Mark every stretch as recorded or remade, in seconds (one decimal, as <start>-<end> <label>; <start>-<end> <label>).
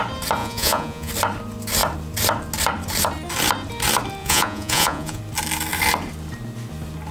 0.0-0.4 recorded; 0.4-1.1 remade; 1.1-4.2 recorded; 4.2-5.2 remade; 5.2-7.1 recorded